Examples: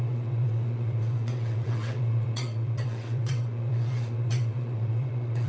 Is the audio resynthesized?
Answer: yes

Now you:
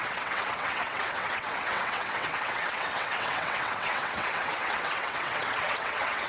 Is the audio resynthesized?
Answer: yes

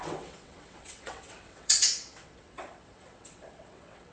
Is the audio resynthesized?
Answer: yes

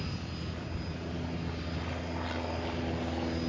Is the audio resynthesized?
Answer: no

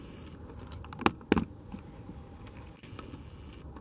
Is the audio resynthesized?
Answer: no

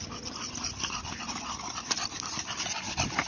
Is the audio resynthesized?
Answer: no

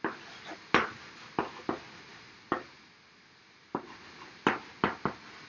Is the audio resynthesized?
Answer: no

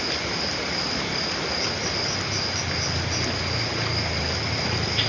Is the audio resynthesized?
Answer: no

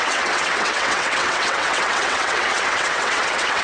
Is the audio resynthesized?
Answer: yes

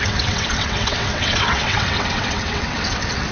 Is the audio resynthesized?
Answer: yes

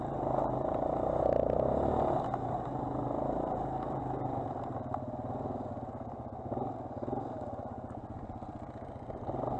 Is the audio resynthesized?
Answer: no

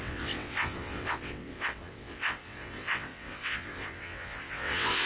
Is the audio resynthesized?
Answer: yes